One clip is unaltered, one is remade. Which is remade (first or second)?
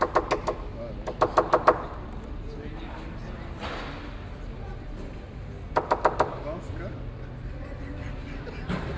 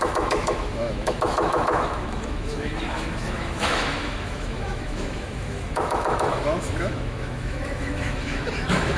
second